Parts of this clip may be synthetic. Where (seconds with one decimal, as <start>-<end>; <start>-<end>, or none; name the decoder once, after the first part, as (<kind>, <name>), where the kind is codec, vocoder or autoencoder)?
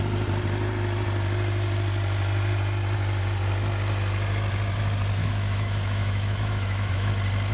5.2-7.1 (autoencoder, DAC-VAE)